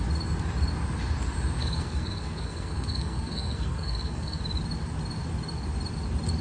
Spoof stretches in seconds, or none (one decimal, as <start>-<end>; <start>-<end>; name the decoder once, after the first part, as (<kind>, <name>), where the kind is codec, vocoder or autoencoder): 1.6-4.4 (codec, SNAC)